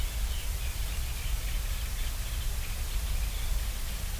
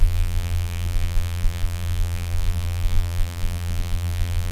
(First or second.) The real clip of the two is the first